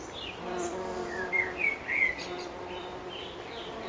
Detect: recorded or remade recorded